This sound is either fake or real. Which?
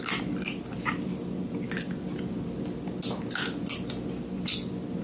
real